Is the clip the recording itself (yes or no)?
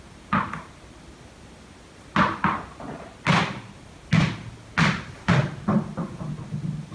yes